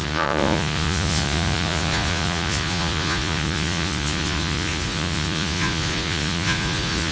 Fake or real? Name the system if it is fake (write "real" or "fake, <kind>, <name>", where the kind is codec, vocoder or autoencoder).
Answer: fake, vocoder, Vocos